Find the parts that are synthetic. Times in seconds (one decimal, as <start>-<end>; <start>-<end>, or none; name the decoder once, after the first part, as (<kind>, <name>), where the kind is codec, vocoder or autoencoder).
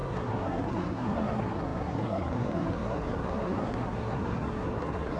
0.0-5.2 (codec, SNAC)